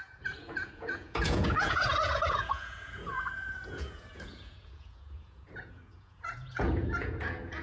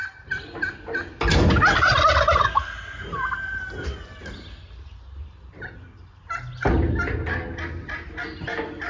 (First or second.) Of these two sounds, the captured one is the second